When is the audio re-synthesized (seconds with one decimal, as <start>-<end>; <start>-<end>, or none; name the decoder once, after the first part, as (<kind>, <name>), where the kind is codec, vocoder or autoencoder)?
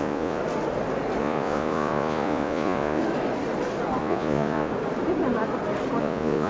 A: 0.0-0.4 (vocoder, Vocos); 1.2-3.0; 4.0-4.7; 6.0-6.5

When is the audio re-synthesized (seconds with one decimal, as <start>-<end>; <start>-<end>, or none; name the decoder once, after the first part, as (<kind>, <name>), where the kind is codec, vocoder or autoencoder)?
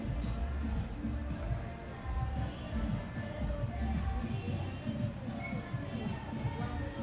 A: none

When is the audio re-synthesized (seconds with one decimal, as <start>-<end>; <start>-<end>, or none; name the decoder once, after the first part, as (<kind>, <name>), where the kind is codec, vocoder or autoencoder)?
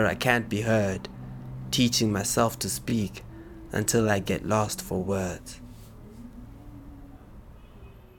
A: 2.9-4.3 (vocoder, Vocos); 5.0-6.3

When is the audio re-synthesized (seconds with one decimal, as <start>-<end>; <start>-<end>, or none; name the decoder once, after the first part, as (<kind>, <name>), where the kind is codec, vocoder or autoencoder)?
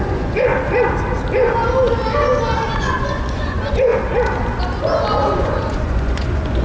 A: 0.0-0.5 (vocoder, Vocos); 2.8-3.9; 5.1-6.6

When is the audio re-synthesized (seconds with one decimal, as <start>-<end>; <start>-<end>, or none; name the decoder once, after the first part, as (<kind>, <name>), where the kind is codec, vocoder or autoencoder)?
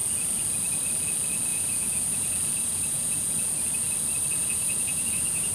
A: 1.5-3.5 (vocoder, Vocos); 4.4-5.5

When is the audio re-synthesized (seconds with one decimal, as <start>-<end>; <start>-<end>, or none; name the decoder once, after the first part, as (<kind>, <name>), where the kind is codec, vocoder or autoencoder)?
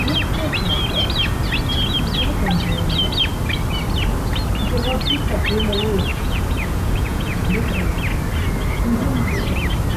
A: 6.1-7.5 (vocoder, Vocos)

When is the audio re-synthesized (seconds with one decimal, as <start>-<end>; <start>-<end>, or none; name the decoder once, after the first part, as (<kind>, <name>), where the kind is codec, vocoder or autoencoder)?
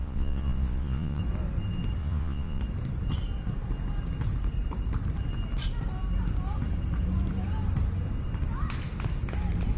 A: 0.0-1.2 (vocoder, Vocos); 2.0-2.6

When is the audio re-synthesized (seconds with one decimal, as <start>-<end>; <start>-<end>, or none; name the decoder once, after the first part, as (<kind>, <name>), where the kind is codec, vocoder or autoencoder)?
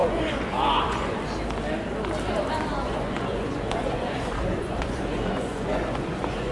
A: 0.0-1.2 (vocoder, Vocos); 2.7-6.5